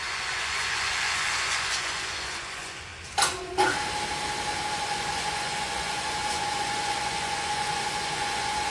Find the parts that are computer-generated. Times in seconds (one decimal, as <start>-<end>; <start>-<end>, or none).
0.0-2.9; 4.7-8.7